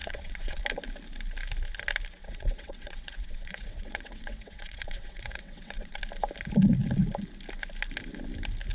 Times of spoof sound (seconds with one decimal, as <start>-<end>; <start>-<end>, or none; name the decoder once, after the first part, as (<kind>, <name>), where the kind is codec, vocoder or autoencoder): 0.0-0.6 (vocoder, WaveNeXt); 2.2-6.0